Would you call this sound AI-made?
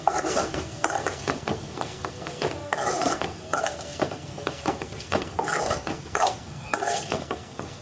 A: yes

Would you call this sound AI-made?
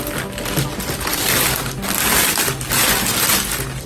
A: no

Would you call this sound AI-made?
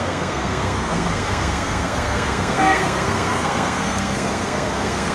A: yes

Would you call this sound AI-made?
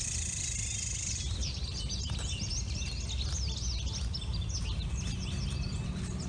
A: no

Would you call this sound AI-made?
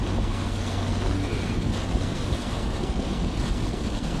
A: yes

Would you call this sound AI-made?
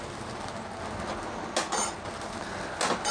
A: no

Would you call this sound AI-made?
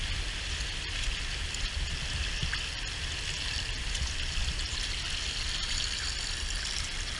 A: no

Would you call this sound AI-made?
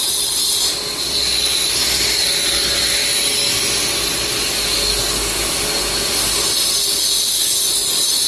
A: no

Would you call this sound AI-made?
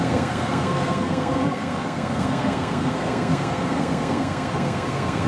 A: yes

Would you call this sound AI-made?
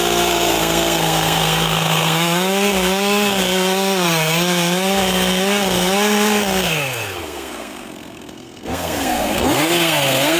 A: yes